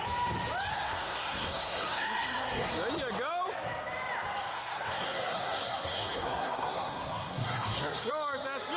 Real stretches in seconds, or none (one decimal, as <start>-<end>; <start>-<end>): 0.0-0.7; 2.7-4.5; 8.1-8.8